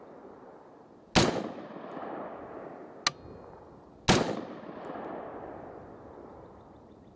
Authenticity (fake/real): real